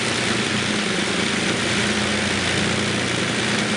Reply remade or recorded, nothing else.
recorded